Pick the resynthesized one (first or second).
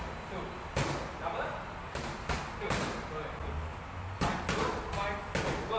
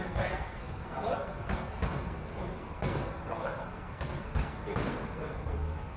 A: second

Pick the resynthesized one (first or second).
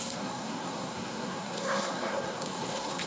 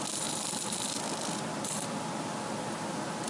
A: first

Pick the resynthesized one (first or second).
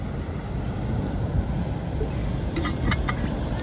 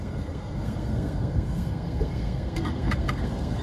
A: second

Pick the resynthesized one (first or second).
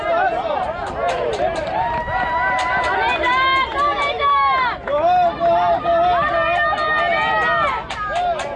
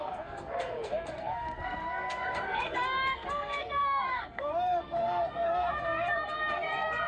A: second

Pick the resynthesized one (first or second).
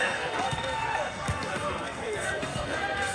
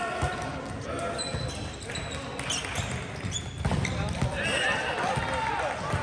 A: first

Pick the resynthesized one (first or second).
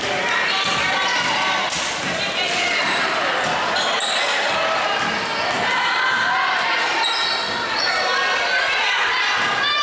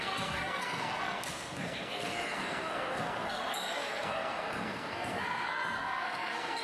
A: second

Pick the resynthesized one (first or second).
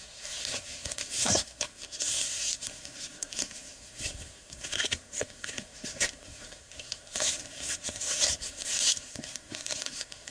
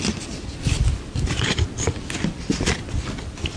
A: first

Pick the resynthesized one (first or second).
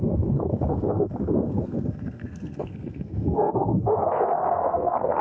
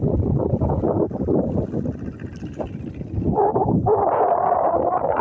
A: first